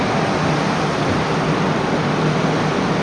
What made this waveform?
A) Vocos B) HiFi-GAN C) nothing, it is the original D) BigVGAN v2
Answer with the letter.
C